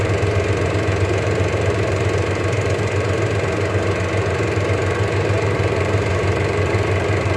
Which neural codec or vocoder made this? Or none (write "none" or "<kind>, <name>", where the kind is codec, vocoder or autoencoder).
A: vocoder, BigVGAN v2